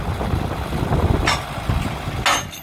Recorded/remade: recorded